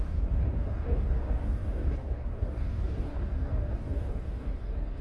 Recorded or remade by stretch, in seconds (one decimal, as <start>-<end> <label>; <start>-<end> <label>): 0.0-5.0 remade